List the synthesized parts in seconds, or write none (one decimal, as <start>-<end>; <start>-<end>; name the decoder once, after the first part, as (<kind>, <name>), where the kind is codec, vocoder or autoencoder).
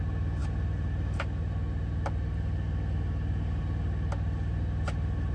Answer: none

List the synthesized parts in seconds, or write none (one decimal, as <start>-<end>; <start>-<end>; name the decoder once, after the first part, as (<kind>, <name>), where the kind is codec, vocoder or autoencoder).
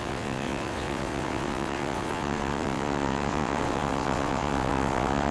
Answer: 0.0-5.3 (vocoder, WaveNeXt)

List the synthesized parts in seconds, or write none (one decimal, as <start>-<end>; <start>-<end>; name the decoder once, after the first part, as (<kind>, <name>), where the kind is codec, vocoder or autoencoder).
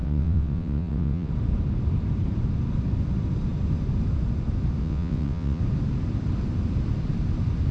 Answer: 0.0-1.3 (vocoder, WaveNeXt); 4.8-5.6